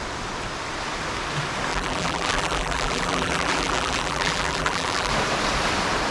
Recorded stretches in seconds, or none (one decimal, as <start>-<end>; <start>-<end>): 0.0-1.7; 5.1-6.1